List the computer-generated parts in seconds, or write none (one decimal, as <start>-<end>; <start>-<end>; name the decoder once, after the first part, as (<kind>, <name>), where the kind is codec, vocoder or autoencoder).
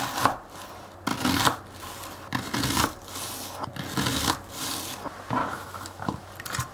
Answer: 5.4-6.3 (autoencoder, DAC-VAE)